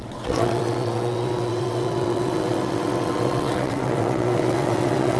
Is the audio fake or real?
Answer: fake